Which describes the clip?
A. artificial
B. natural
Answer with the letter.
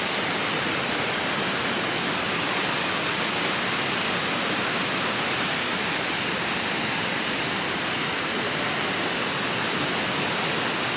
B